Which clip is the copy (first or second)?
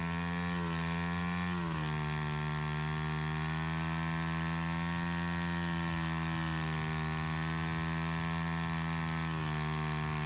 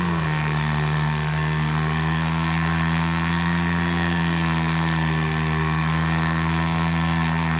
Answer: second